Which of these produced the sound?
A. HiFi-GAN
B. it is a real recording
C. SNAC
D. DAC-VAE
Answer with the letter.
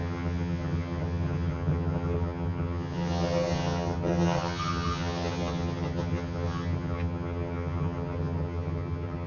A